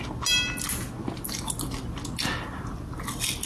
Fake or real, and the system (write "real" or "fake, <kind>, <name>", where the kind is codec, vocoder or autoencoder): real